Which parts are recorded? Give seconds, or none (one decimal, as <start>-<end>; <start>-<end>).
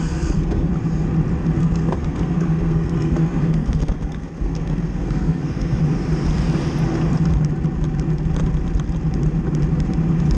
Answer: 0.7-1.6; 5.8-10.4